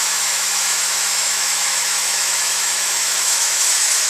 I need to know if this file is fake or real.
fake